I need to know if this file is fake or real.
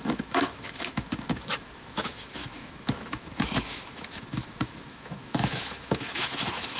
fake